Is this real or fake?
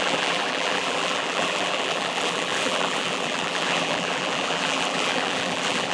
fake